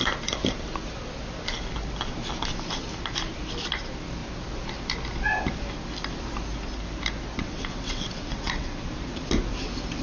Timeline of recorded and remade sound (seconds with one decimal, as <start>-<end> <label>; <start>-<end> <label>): 0.0-7.3 recorded; 7.3-8.9 remade; 8.9-10.0 recorded